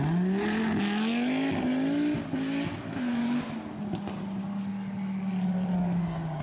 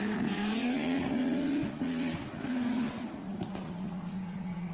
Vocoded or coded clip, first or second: second